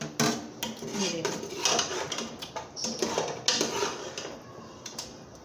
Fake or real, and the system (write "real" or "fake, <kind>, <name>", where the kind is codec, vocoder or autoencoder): real